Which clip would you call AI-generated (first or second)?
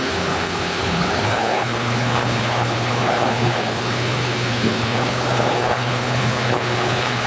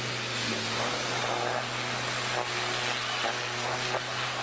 first